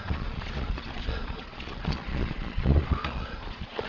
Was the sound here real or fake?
fake